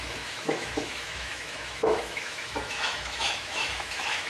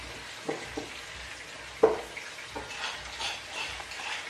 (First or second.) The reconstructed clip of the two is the first